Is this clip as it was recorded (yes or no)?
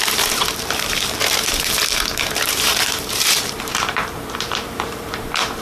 no